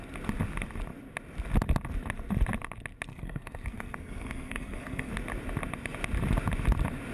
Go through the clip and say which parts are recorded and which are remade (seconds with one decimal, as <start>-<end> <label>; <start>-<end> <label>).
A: 0.0-3.1 recorded; 3.1-5.1 remade; 5.1-7.1 recorded

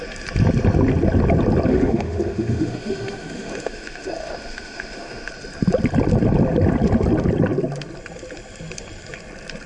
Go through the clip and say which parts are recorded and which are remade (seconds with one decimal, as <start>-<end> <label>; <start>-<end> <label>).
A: 0.0-1.7 recorded; 1.7-5.3 remade; 5.3-9.7 recorded

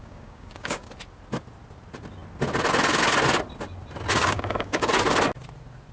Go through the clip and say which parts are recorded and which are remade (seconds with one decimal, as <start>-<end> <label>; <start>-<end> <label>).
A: 0.0-0.9 remade; 0.9-4.2 recorded; 4.2-4.9 remade; 4.9-5.9 recorded